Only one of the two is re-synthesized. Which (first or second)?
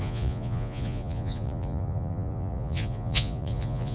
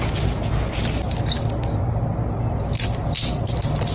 first